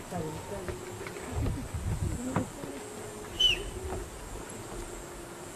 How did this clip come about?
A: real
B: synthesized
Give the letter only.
A